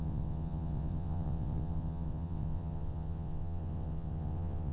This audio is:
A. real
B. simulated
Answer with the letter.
B